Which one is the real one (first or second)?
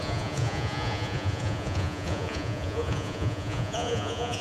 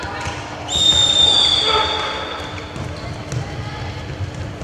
second